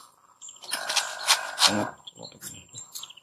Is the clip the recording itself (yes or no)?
yes